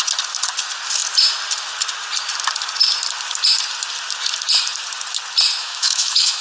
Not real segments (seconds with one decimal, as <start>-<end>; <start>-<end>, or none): 5.6-6.4